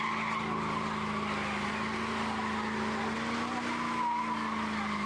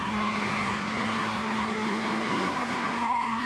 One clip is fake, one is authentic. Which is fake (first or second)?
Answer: second